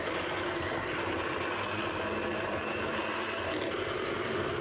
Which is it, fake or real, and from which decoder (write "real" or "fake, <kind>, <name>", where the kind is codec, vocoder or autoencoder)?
real